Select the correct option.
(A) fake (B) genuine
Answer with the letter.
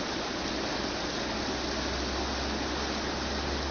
B